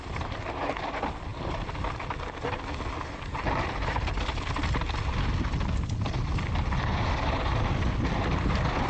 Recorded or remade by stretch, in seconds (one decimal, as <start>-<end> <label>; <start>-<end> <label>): 0.0-8.9 recorded